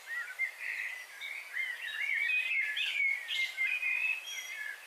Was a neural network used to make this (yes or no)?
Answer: no